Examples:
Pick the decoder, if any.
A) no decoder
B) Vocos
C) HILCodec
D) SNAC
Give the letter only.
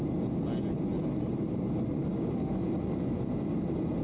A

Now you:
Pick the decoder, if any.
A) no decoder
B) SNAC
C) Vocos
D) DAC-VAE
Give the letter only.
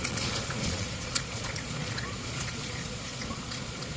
C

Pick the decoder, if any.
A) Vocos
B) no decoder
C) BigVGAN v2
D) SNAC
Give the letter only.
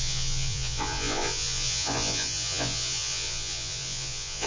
A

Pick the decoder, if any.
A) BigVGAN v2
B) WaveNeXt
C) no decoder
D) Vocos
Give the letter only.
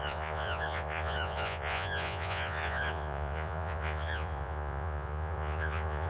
D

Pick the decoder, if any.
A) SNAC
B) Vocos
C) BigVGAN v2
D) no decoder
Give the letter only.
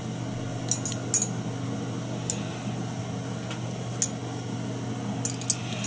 D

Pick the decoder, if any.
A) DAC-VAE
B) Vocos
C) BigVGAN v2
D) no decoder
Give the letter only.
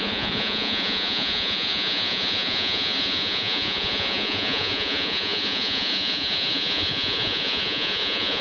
B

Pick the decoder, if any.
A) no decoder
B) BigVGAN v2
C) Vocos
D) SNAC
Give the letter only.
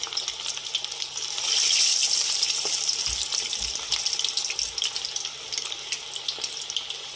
A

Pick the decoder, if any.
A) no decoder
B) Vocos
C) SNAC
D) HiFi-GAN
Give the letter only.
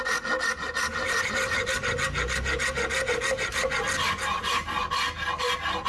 A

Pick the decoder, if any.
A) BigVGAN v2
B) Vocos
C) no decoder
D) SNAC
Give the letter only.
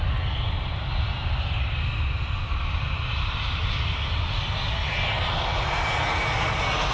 C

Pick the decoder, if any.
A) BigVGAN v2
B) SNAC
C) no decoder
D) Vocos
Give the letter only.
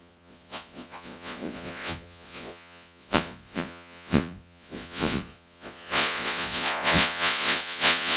D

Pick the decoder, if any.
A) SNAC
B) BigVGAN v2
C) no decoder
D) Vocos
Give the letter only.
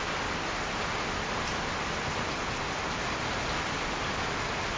C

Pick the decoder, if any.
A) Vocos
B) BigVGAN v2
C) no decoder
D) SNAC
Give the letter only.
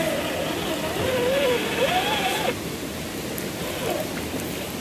C